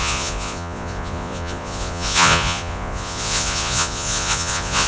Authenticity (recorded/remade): remade